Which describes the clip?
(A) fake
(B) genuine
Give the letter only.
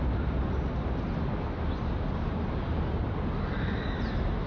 B